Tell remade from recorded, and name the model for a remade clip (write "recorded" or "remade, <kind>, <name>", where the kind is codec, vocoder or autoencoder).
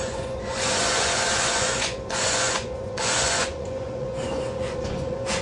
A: remade, vocoder, Vocos